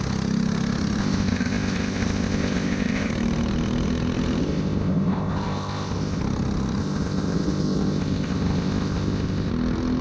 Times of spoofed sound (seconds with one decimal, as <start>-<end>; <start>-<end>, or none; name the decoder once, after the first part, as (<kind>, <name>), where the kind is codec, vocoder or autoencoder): 1.0-3.1 (codec, ZipCodec); 4.4-6.2; 6.8-9.5